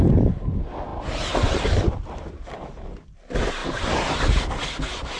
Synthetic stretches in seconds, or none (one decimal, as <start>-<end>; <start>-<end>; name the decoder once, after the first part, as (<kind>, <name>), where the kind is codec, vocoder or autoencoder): none